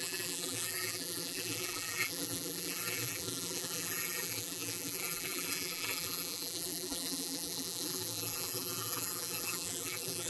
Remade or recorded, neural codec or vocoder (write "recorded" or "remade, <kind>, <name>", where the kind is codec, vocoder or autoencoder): remade, vocoder, BigVGAN v2